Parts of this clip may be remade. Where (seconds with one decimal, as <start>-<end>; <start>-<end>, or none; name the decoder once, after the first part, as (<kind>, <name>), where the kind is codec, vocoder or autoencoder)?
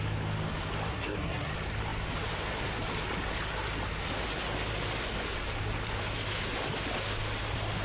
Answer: 0.9-1.5 (codec, SNAC)